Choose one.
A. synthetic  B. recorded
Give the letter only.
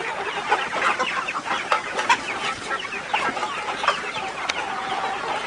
B